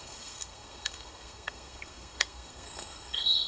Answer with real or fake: fake